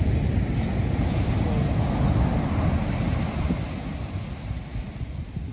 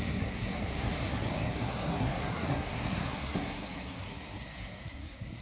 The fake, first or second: second